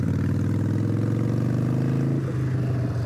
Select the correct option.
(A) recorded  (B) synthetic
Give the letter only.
A